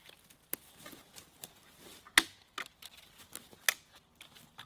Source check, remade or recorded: recorded